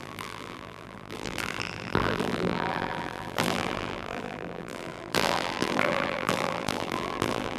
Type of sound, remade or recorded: remade